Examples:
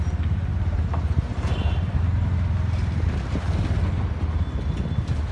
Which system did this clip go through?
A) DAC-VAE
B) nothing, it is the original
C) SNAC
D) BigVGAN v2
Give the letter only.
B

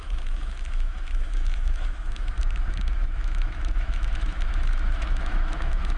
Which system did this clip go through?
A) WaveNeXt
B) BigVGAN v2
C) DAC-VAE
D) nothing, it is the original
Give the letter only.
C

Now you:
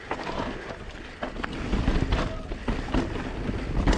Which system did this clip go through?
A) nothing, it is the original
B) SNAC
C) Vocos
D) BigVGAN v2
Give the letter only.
A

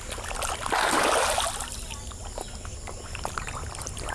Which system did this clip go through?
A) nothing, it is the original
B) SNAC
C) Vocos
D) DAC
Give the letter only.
A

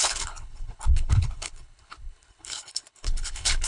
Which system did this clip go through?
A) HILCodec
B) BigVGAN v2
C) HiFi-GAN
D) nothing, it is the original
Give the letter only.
A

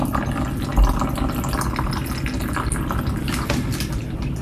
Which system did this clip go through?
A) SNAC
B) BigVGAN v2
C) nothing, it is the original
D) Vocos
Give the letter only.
C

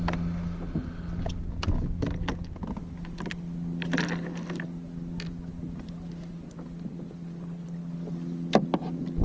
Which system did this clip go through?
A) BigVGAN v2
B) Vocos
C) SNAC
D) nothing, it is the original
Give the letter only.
D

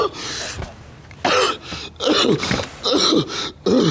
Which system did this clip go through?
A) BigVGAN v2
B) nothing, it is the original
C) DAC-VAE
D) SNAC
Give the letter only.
B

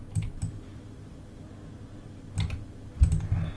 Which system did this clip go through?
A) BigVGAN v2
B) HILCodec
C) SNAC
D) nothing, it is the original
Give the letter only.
D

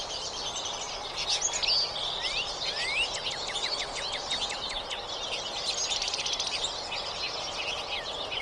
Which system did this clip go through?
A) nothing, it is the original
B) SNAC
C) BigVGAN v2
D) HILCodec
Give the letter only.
A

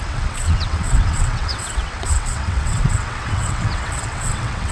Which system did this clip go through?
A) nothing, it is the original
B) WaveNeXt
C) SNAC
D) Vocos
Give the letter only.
B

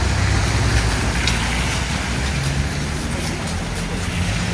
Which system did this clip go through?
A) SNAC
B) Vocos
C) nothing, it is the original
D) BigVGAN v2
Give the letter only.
C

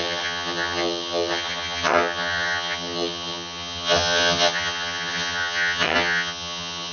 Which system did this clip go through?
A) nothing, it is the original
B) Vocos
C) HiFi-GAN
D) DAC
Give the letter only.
C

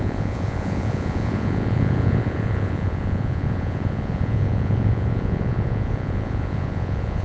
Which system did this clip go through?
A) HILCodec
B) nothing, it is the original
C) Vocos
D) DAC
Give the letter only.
C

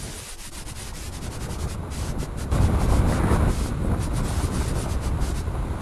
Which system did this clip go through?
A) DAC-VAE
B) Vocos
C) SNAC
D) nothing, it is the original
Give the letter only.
D